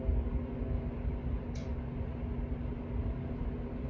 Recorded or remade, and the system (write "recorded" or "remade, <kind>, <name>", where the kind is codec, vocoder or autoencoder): recorded